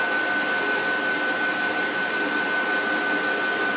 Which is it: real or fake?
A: real